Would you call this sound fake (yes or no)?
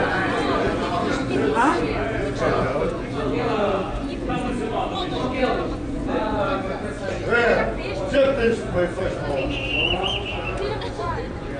yes